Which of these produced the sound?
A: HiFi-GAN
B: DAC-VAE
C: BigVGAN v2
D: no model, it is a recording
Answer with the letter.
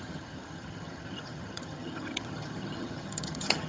A